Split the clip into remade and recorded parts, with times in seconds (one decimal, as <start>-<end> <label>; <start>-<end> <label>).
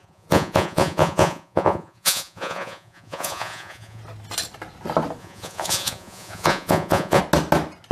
0.0-4.0 remade; 4.0-5.2 recorded; 5.2-7.2 remade; 7.2-7.9 recorded